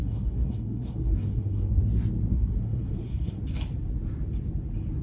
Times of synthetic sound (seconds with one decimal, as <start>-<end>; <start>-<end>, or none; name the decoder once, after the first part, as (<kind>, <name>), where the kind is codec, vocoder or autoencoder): 0.0-1.8 (codec, SNAC); 2.3-3.4